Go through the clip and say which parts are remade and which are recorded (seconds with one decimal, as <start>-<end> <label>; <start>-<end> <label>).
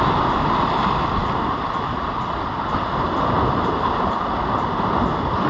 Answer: 0.0-5.5 recorded